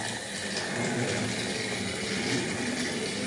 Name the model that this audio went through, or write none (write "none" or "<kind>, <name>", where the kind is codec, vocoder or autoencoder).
none